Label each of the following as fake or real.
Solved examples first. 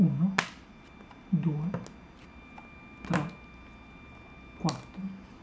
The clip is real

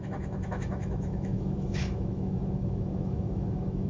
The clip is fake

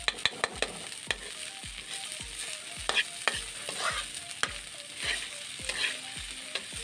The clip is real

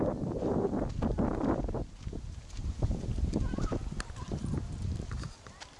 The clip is real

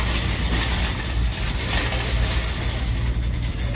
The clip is real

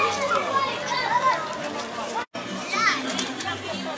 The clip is real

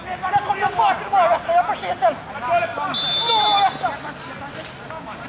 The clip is real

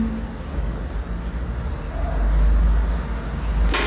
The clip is real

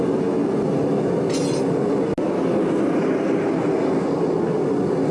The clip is real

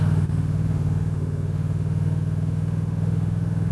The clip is fake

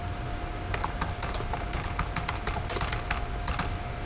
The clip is real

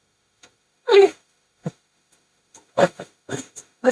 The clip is fake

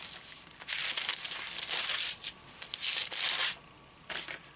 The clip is real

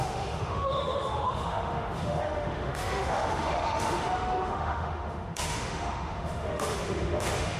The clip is fake